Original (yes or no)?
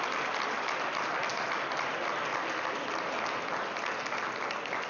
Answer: yes